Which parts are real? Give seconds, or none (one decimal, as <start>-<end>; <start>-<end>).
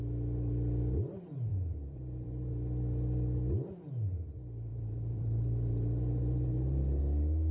0.0-1.5; 2.5-4.7; 7.0-7.5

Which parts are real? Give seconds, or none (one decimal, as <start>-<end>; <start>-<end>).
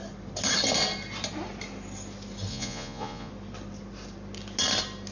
0.0-2.5; 3.3-5.1